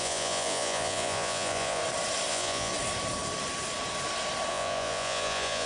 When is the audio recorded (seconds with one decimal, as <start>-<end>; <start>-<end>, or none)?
1.8-2.3; 2.7-4.5